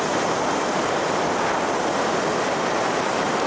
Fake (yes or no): yes